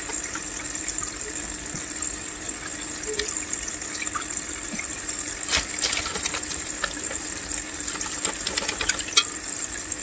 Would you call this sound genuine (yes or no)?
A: yes